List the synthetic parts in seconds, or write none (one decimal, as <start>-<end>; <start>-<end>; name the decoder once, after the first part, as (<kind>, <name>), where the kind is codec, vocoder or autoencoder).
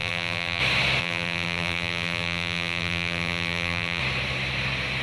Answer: 0.0-0.6 (vocoder, BigVGAN v2); 1.0-4.0